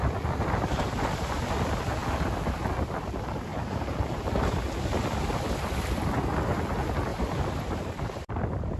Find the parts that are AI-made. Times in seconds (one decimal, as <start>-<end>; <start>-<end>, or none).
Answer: 3.5-4.3; 7.1-8.3